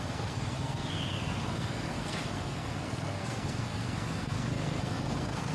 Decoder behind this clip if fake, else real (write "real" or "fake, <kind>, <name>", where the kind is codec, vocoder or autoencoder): fake, codec, SNAC